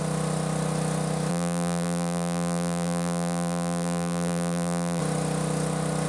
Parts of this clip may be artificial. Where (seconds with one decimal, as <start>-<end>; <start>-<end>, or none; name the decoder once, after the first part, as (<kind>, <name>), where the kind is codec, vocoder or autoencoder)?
1.3-5.0 (vocoder, BigVGAN v2)